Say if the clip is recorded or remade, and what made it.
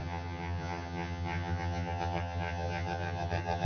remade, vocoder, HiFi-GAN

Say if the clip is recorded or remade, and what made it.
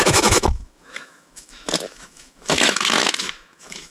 remade, autoencoder, DAC-VAE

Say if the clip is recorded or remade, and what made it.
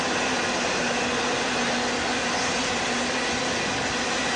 recorded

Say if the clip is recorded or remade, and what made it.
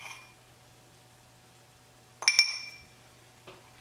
recorded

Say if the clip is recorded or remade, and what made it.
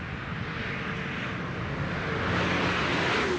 recorded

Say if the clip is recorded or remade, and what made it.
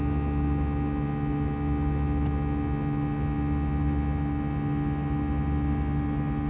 recorded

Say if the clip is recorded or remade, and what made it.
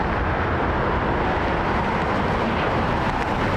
recorded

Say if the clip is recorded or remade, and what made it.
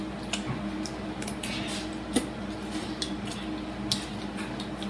recorded